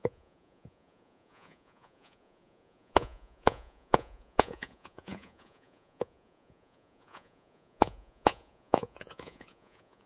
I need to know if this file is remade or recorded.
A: remade